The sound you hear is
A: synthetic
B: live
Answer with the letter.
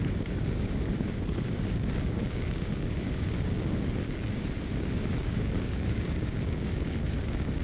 A